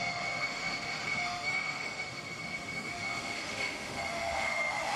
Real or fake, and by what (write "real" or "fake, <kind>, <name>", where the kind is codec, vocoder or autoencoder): fake, autoencoder, DAC-VAE